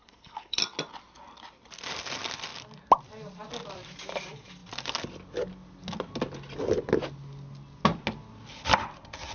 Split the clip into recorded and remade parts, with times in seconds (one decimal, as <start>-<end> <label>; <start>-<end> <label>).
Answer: 0.0-0.6 remade; 0.6-9.3 recorded